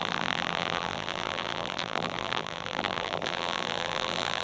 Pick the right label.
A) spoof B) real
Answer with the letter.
A